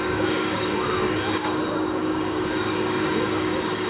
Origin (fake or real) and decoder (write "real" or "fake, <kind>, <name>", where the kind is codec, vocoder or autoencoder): fake, codec, DAC